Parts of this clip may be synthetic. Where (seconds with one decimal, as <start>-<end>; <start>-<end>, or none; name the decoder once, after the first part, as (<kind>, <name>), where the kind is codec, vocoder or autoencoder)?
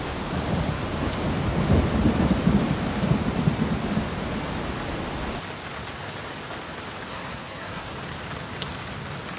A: 7.1-7.9 (codec, SNAC)